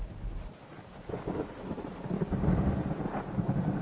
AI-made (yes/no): no